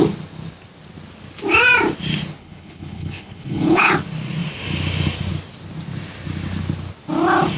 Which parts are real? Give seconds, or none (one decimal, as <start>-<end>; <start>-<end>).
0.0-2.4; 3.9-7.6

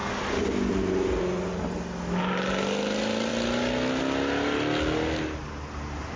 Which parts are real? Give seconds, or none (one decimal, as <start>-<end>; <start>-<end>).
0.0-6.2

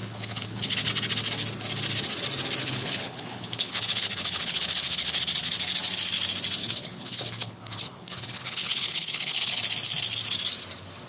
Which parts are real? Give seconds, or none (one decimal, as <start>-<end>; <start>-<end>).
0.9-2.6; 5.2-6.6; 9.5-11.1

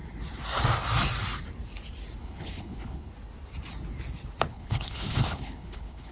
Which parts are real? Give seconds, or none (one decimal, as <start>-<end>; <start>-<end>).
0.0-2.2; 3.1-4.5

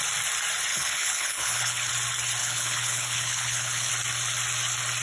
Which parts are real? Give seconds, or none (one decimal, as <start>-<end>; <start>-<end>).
0.0-0.7; 1.9-2.4; 3.9-5.0

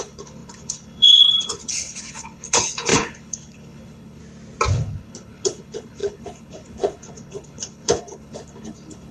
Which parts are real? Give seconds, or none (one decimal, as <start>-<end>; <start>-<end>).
4.2-4.7